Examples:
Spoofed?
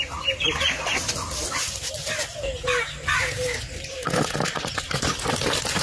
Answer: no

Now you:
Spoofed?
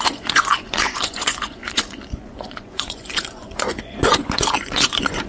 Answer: yes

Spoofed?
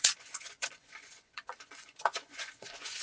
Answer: yes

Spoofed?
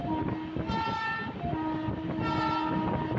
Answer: no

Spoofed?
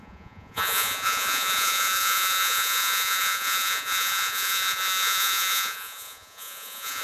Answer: yes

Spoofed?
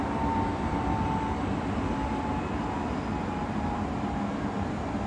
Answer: no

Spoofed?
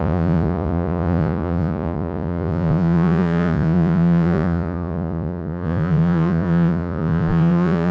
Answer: yes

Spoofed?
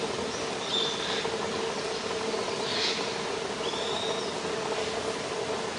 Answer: no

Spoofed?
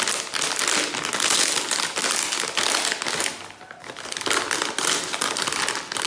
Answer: no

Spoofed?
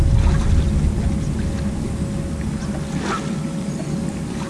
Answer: no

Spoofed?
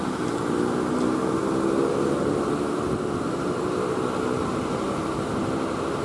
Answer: no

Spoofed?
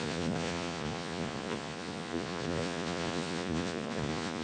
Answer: yes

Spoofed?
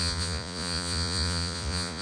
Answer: yes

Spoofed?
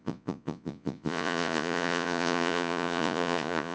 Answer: yes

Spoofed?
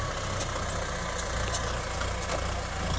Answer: no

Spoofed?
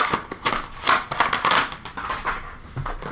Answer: no